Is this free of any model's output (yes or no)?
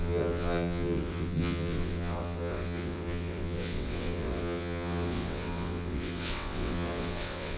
no